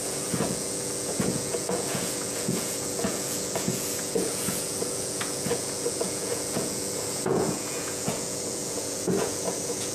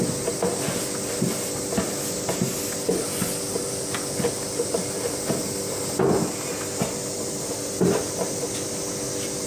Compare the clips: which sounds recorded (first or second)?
second